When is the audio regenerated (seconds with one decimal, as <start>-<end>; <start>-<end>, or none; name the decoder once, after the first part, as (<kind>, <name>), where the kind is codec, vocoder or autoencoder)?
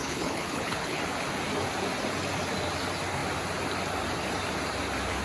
0.0-1.0 (codec, HILCodec)